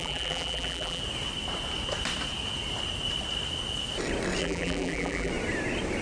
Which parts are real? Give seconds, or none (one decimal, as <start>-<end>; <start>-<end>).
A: 1.0-4.4; 5.3-6.0

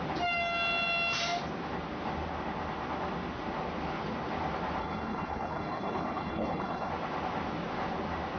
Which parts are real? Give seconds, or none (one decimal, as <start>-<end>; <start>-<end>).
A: 0.0-4.8; 6.9-8.4

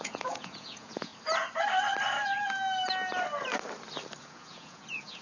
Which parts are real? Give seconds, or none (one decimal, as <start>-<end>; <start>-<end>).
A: 1.1-4.2

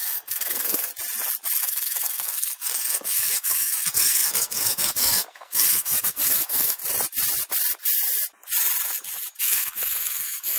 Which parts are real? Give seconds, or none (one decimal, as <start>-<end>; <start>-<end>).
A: 0.9-1.6; 6.8-9.4

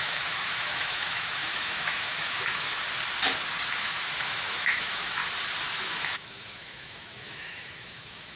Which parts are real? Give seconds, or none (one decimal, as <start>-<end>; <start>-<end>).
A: 2.7-3.8; 5.2-5.8

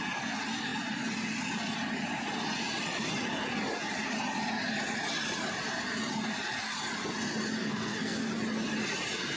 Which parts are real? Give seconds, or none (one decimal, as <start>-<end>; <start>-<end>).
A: 0.0-7.6; 8.3-9.4